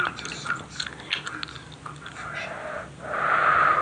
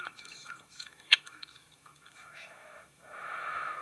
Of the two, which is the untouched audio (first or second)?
first